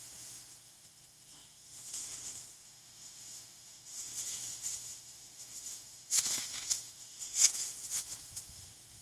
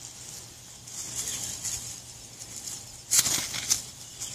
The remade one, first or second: first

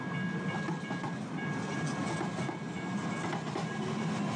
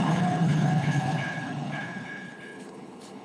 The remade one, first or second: second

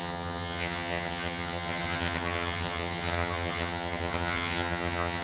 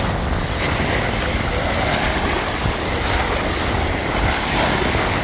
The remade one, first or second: first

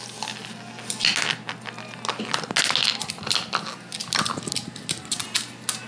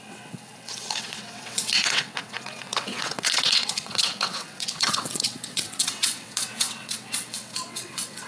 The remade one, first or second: second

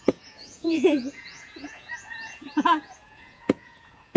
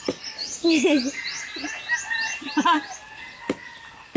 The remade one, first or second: first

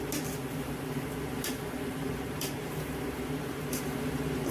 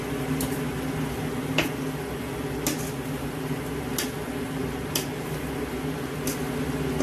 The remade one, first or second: first